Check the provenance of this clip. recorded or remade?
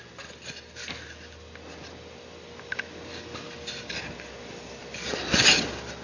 recorded